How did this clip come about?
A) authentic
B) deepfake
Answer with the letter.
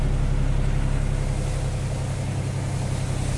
A